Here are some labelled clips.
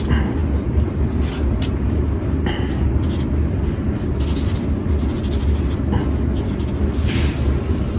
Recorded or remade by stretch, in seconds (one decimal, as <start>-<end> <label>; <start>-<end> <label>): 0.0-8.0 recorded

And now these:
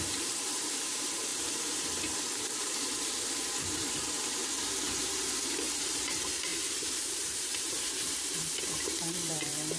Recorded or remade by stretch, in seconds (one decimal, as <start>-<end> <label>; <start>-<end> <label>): 0.0-4.4 remade; 4.4-4.9 recorded; 4.9-9.8 remade

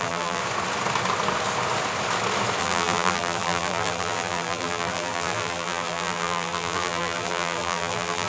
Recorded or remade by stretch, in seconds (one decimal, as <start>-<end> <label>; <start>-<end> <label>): 0.0-0.4 remade; 0.4-2.6 recorded; 2.6-8.3 remade